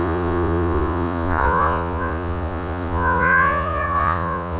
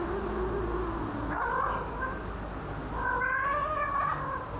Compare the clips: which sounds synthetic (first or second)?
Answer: first